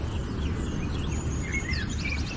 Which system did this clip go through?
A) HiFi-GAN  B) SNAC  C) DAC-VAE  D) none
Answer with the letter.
D